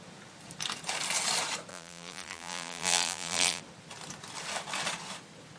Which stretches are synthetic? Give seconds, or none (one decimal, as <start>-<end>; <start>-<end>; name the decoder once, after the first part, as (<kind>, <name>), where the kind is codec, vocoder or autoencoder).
1.7-3.6 (vocoder, BigVGAN v2)